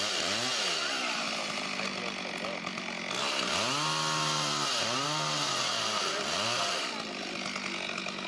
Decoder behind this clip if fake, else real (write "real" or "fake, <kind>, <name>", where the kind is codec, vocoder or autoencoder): real